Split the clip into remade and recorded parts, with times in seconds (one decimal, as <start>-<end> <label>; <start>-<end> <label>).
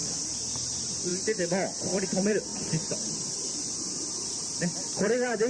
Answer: 0.0-0.7 recorded; 0.7-1.1 remade; 1.1-1.8 recorded; 1.8-2.5 remade; 2.5-3.2 recorded; 3.2-5.5 remade